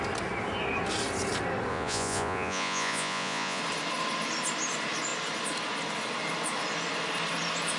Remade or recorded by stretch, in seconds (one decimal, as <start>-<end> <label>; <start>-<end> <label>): 0.0-1.7 recorded; 1.7-3.6 remade; 3.6-7.8 recorded